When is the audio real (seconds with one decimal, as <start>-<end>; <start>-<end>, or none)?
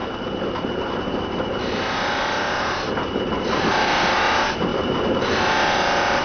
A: none